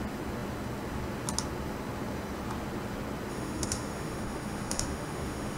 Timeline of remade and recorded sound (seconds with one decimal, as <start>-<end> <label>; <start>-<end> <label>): 0.0-3.3 recorded; 3.3-5.6 remade